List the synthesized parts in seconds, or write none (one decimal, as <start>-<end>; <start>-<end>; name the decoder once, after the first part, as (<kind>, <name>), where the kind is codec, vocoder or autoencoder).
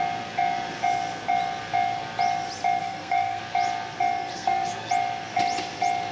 2.8-3.4 (codec, SNAC); 4.3-4.9